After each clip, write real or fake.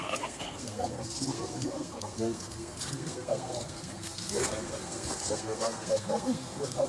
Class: fake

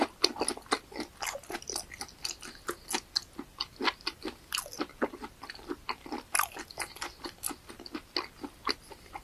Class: real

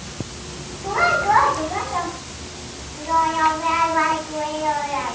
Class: real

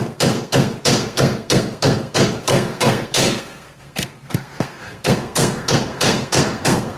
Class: fake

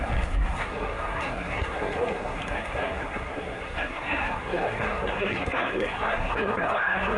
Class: fake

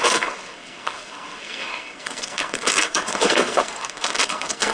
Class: fake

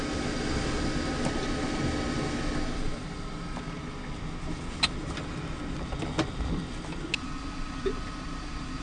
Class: real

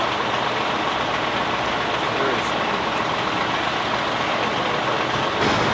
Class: real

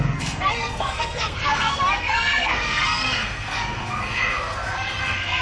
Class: fake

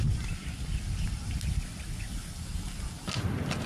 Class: real